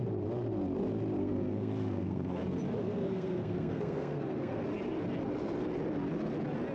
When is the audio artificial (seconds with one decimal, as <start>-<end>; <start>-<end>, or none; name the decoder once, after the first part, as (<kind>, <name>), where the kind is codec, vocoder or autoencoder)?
1.2-2.4 (codec, SNAC); 2.8-4.6